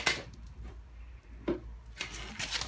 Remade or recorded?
recorded